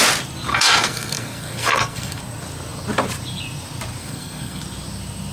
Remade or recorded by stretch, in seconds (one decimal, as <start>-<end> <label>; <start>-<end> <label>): 0.0-0.5 recorded; 0.5-2.2 remade; 2.2-4.0 recorded; 4.0-4.6 remade; 4.6-5.3 recorded

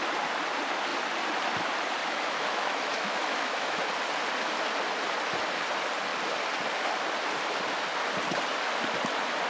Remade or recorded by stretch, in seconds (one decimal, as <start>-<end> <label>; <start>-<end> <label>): 0.0-2.0 recorded; 2.0-3.9 remade; 3.9-9.5 recorded

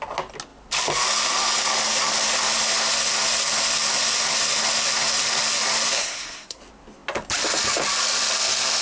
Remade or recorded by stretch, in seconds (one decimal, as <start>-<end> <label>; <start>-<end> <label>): 0.0-6.0 recorded; 6.0-6.6 remade; 6.6-8.8 recorded

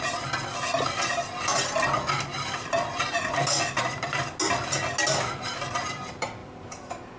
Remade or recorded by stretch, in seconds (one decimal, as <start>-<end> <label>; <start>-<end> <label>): 0.0-6.4 recorded; 6.4-7.2 remade

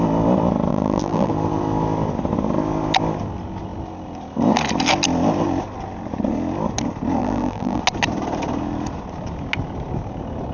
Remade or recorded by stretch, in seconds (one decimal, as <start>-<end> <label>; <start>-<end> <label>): 0.0-0.7 recorded; 0.7-1.3 remade; 1.3-7.2 recorded; 7.2-7.8 remade; 7.8-10.5 recorded